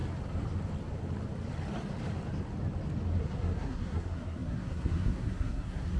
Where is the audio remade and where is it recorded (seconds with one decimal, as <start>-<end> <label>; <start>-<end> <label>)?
0.0-3.2 recorded; 3.2-6.0 remade